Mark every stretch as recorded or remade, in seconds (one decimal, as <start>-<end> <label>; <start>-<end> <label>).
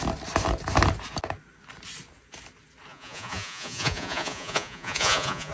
0.0-2.9 recorded; 2.9-5.5 remade